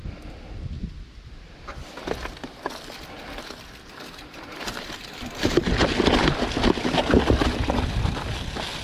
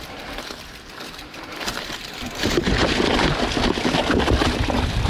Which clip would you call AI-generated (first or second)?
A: second